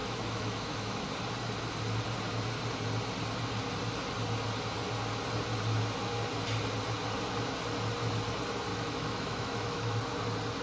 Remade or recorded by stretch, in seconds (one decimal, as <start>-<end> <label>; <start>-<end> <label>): 0.0-1.0 remade; 1.0-8.7 recorded; 8.7-10.0 remade; 10.0-10.6 recorded